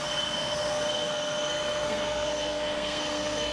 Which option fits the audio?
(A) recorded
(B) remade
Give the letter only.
B